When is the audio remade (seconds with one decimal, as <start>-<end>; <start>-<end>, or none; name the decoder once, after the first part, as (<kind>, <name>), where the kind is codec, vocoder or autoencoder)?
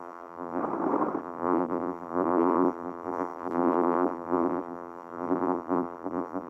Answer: 0.0-0.6 (vocoder, BigVGAN v2); 1.2-6.5